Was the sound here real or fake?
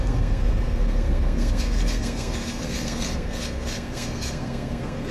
fake